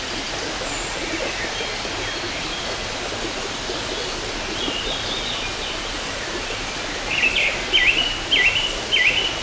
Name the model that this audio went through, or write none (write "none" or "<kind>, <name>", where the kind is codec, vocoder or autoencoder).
none